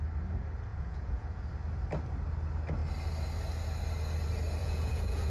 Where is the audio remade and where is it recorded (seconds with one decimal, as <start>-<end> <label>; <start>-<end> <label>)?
0.0-0.7 recorded; 0.7-1.4 remade; 1.4-4.6 recorded; 4.6-5.3 remade